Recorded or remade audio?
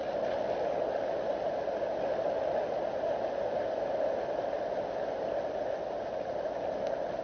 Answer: recorded